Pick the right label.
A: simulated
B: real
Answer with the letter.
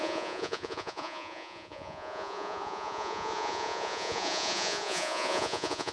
A